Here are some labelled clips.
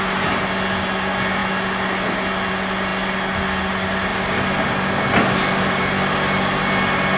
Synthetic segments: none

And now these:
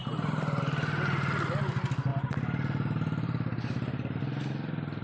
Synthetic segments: 0.0-0.6 (vocoder, BigVGAN v2); 2.1-4.2

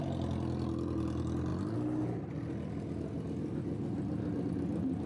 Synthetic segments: none

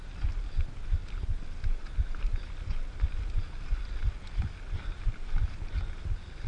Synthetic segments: none

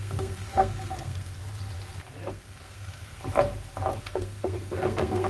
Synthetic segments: 0.0-1.4 (codec, SNAC); 2.3-3.2; 4.0-5.3